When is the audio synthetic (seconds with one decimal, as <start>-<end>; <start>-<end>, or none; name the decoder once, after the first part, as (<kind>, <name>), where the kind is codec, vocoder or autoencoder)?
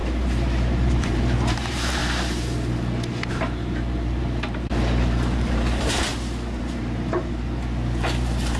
0.0-2.0 (vocoder, BigVGAN v2); 3.3-6.1; 6.6-8.6